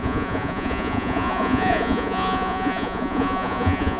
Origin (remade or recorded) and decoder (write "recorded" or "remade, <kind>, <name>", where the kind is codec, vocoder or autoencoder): remade, vocoder, Vocos